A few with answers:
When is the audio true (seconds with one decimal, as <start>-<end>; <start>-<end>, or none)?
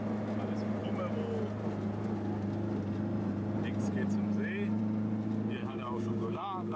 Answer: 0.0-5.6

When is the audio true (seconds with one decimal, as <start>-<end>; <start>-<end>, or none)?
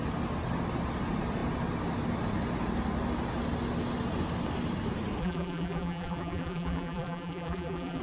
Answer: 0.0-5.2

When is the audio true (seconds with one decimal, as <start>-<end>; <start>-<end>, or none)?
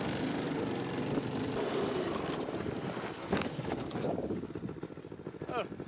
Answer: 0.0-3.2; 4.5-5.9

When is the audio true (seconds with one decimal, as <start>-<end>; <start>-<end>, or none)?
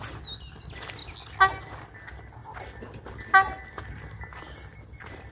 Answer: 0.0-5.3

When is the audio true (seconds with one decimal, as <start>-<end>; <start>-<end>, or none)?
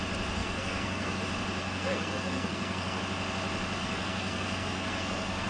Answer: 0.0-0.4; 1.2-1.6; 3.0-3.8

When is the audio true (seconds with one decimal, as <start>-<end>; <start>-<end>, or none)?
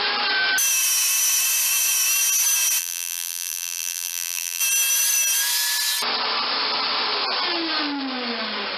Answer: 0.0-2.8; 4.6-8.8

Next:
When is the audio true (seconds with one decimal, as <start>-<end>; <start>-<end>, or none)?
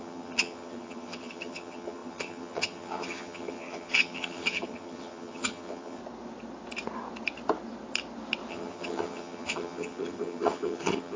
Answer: 6.0-8.5